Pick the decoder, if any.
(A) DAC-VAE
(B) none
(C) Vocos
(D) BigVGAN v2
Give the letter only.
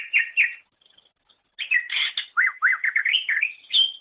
B